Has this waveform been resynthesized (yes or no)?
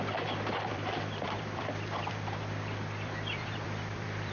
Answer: yes